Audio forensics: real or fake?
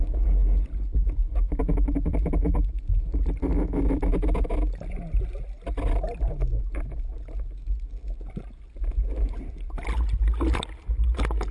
real